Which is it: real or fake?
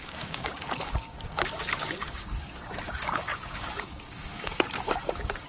fake